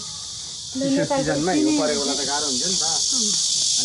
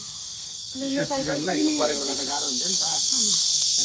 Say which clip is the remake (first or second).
second